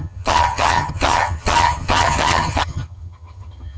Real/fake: fake